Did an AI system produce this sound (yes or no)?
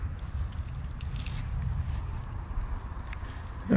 no